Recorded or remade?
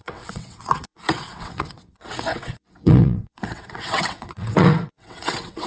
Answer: remade